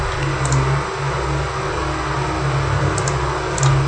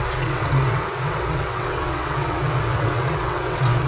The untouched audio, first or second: first